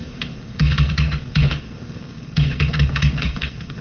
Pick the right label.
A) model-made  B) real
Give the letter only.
A